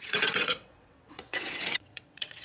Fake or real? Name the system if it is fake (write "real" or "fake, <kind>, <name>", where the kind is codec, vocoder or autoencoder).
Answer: fake, vocoder, WaveNeXt